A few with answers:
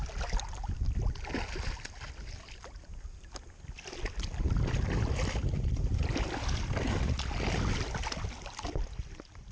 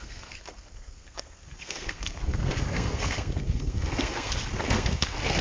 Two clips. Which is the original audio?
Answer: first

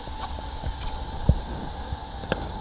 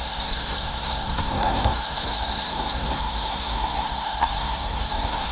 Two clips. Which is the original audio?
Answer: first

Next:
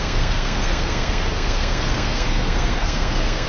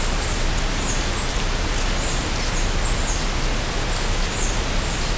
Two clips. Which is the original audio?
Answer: second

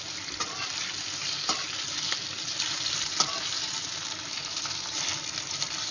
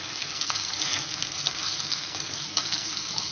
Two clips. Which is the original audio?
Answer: first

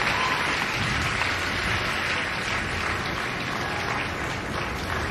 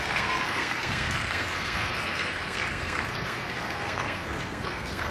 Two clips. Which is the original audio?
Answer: first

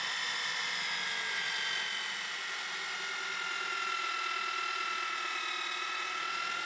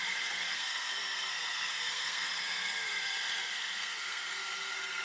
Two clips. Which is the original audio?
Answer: first